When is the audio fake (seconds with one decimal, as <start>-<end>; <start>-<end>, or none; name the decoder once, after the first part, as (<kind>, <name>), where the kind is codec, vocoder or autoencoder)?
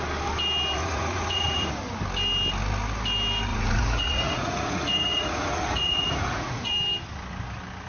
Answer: 0.8-1.7 (vocoder, Vocos); 3.5-6.7